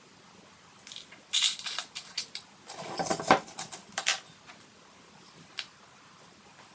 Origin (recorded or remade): recorded